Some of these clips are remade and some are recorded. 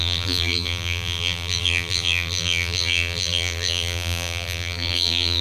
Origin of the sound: remade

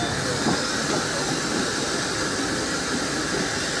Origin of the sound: recorded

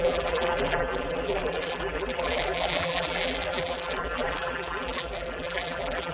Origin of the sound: remade